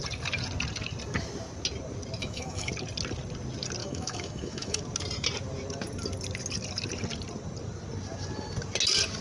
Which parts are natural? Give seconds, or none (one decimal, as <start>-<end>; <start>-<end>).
0.0-2.2; 2.7-3.8; 4.8-9.2